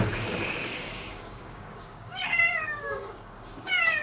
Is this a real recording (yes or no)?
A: no